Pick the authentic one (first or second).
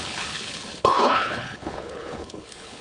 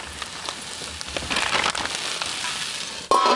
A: second